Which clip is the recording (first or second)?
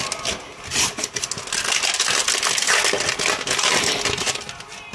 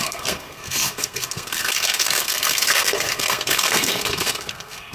first